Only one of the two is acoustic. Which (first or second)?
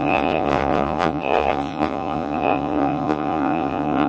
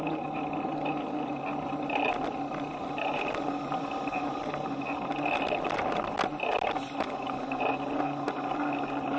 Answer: second